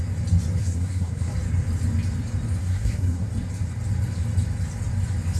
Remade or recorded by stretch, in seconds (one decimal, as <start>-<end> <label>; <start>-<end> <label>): 0.0-0.6 recorded; 0.6-1.3 remade; 1.3-2.6 recorded; 2.6-3.3 remade; 3.3-5.4 recorded